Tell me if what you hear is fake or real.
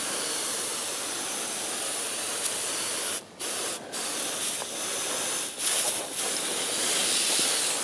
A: real